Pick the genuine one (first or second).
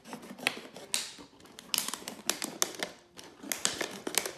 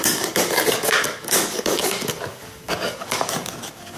first